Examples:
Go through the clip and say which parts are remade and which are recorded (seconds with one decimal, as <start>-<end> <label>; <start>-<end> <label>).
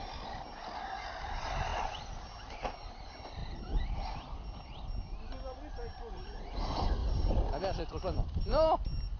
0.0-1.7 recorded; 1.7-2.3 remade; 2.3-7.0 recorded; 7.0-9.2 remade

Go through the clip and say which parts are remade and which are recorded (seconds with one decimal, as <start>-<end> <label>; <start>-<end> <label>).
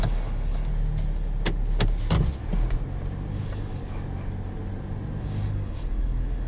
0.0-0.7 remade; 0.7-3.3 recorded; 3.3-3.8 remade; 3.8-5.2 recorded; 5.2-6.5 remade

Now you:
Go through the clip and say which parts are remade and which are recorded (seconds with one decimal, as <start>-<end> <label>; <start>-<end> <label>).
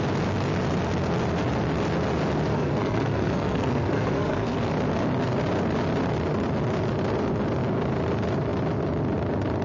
0.0-2.5 recorded; 2.5-4.7 remade; 4.7-9.6 recorded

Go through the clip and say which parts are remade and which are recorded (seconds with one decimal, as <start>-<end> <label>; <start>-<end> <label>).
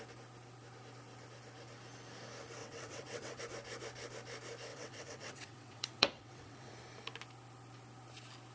0.0-2.6 recorded; 2.6-3.4 remade; 3.4-4.7 recorded; 4.7-6.7 remade; 6.7-8.5 recorded